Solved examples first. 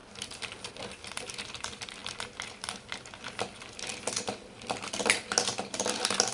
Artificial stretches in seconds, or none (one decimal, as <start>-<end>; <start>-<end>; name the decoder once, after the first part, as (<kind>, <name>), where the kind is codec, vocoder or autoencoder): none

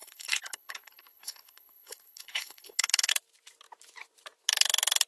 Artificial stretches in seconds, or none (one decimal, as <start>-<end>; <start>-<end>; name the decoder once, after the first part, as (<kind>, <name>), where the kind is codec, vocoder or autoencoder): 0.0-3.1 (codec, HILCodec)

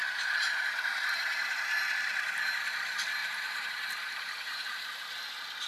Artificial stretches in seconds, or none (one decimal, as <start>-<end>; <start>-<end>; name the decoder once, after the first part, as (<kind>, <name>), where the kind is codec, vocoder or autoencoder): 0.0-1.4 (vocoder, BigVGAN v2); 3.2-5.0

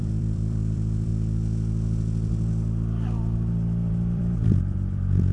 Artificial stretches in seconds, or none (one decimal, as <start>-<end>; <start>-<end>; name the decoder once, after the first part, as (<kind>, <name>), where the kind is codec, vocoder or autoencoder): 0.0-1.1 (vocoder, BigVGAN v2); 3.9-5.3